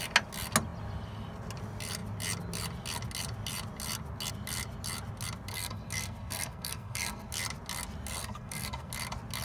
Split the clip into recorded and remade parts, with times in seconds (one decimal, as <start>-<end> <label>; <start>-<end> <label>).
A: 0.0-5.5 recorded; 5.5-7.3 remade; 7.3-8.2 recorded; 8.2-8.9 remade; 8.9-9.4 recorded

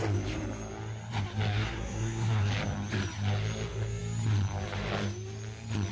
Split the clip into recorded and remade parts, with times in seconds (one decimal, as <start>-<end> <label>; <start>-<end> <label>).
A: 0.0-1.5 recorded; 1.5-2.5 remade; 2.5-5.9 recorded

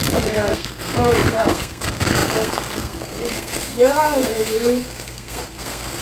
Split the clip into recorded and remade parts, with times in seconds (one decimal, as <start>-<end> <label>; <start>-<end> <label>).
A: 0.0-6.0 remade